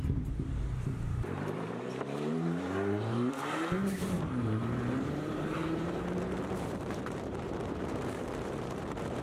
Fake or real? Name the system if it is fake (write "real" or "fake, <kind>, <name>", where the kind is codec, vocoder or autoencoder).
fake, vocoder, BigVGAN v2